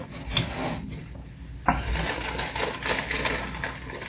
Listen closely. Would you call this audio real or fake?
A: real